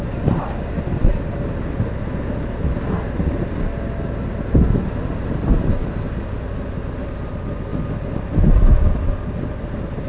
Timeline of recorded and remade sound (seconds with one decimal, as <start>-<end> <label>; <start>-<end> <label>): 0.0-10.1 recorded